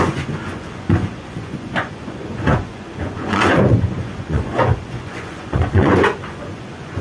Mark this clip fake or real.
fake